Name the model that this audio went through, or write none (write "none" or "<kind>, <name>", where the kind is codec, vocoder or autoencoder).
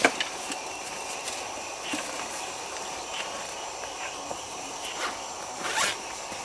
none